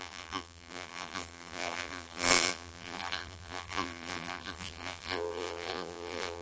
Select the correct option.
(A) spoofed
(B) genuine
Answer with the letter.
A